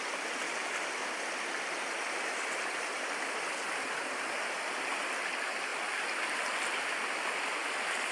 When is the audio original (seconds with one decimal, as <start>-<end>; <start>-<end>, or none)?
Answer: 0.0-8.1